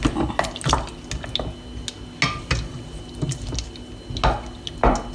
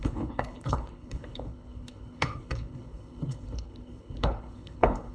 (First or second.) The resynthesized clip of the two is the second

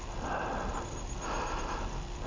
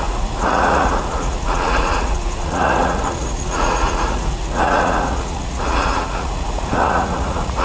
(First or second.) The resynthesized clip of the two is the second